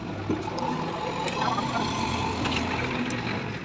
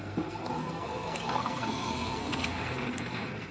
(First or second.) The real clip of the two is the first